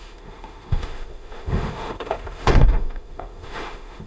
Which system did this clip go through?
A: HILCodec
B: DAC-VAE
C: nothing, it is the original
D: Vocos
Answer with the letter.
B